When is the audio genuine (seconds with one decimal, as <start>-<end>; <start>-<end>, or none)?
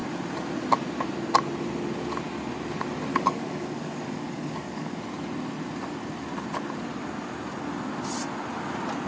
0.0-3.1; 5.0-9.1